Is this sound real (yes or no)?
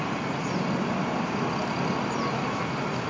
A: yes